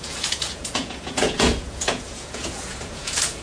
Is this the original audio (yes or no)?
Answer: no